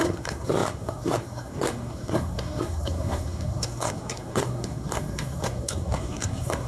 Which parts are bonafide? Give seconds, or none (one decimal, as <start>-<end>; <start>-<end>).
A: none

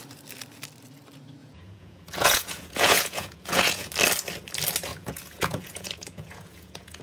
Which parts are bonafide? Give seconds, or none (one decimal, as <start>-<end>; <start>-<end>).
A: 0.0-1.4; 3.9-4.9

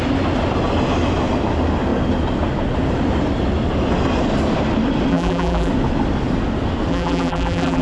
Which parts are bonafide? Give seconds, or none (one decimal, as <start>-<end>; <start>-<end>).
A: 0.0-5.1; 5.7-6.9

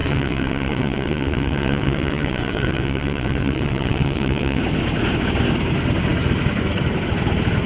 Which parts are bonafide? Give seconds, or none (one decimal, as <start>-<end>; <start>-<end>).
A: 4.6-7.7

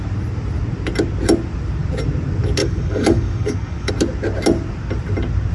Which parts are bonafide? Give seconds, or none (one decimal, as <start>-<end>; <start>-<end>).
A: 0.0-2.6; 3.9-5.5